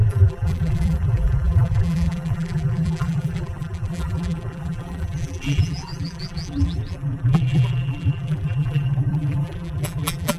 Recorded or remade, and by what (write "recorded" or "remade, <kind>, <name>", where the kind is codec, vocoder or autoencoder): remade, vocoder, BigVGAN v2